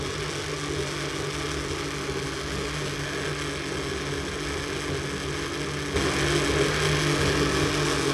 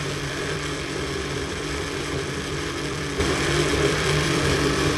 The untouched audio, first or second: first